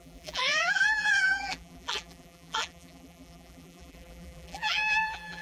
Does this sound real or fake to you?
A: fake